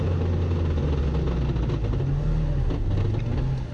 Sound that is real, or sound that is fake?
real